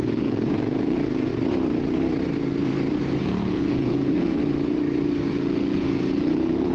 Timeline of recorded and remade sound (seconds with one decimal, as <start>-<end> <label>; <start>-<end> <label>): 0.0-1.3 remade; 1.3-3.2 recorded; 3.2-4.4 remade; 4.4-5.3 recorded; 5.3-6.7 remade